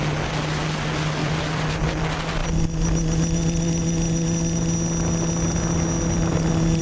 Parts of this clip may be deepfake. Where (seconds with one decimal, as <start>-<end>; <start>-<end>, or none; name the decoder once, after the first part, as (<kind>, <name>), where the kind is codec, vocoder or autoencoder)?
1.2-1.7 (vocoder, BigVGAN v2)